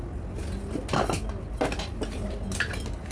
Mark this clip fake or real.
real